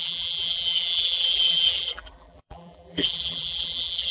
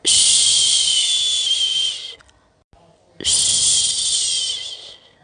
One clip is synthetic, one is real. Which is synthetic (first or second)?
first